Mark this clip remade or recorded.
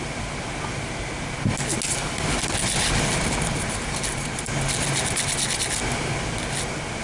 recorded